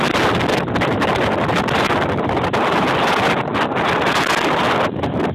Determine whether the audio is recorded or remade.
remade